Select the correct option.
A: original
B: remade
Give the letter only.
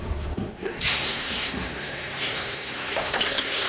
B